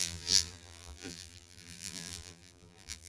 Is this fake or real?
fake